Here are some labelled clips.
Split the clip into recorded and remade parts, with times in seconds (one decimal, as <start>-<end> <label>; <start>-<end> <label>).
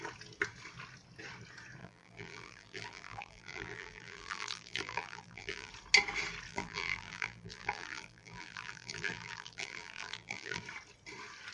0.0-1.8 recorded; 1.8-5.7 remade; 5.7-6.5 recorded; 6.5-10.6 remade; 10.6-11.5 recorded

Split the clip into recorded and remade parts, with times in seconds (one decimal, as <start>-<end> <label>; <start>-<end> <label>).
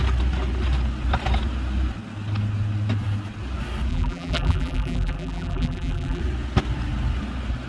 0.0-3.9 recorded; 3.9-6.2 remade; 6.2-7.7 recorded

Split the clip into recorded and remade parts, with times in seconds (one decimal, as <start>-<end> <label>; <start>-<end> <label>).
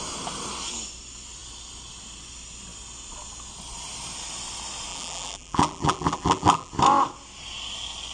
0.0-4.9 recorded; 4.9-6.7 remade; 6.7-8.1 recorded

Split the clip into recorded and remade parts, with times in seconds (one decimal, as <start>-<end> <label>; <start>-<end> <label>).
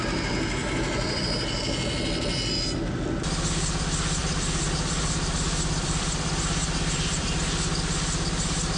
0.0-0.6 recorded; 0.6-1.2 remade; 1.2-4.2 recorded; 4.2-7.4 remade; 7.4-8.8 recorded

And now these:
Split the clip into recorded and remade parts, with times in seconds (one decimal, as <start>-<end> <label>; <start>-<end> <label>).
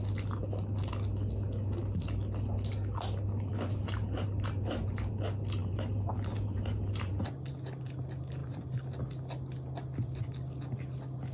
0.0-3.5 recorded; 3.5-5.1 remade; 5.1-5.6 recorded; 5.6-7.5 remade; 7.5-8.4 recorded; 8.4-8.9 remade; 8.9-11.3 recorded